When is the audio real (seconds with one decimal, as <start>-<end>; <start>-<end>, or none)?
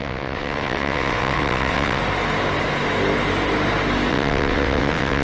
2.0-4.1